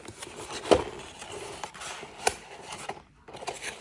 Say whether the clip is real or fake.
fake